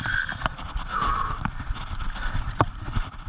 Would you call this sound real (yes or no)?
yes